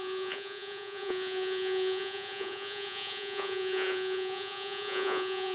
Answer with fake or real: fake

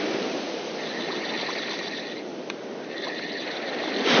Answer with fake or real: real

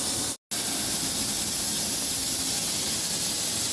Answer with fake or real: real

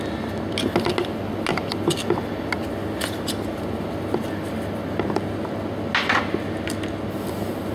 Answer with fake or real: real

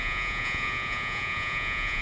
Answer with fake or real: fake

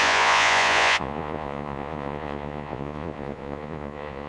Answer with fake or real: fake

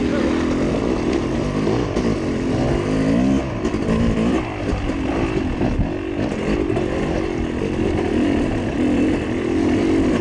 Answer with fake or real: real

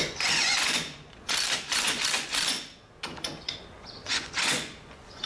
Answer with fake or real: fake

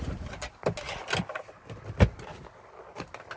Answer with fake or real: real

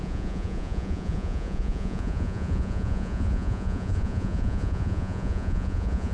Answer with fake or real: fake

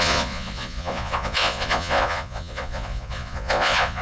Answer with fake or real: fake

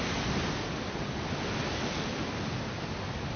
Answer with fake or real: real